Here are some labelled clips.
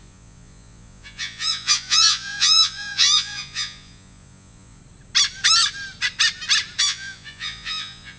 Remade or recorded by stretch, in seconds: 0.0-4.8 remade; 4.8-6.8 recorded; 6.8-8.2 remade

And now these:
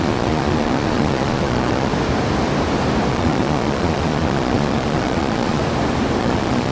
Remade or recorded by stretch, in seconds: 0.0-1.9 remade; 1.9-3.1 recorded; 3.1-5.6 remade; 5.6-6.2 recorded; 6.2-6.7 remade

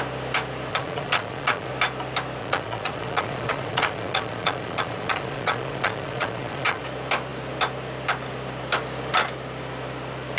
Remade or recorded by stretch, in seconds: 0.0-0.7 recorded; 0.7-1.7 remade; 1.7-2.4 recorded; 2.4-6.8 remade; 6.8-10.4 recorded

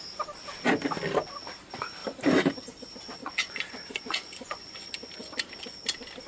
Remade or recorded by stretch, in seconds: 0.0-3.2 recorded; 3.2-4.9 remade; 4.9-6.3 recorded

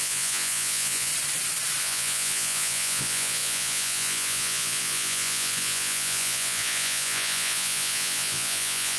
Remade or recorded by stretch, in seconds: 0.0-1.1 remade; 1.1-1.8 recorded; 1.8-9.0 remade